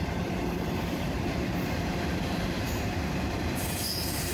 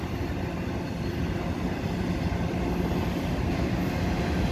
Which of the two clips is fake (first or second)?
first